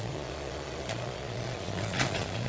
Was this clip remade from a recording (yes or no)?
yes